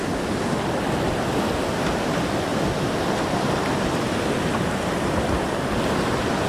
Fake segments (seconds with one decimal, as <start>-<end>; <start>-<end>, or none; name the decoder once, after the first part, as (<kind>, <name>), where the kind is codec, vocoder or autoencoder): 2.5-3.1 (vocoder, BigVGAN v2)